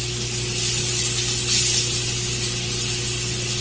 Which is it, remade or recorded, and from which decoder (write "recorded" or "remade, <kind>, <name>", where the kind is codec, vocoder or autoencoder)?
recorded